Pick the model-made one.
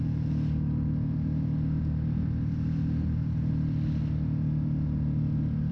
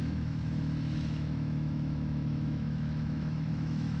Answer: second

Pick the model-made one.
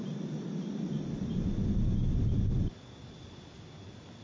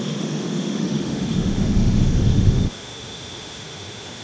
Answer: second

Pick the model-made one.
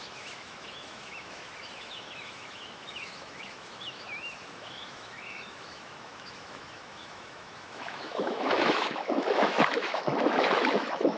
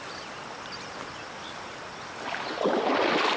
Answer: first